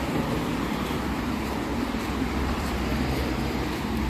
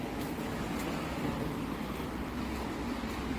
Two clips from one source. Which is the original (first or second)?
second